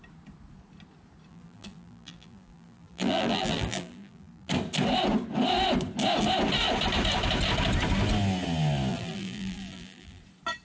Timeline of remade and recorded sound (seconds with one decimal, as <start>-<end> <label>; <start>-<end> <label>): 0.0-1.3 recorded; 1.3-4.5 remade; 4.5-8.9 recorded; 8.9-10.2 remade; 10.2-10.6 recorded